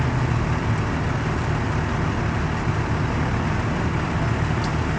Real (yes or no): yes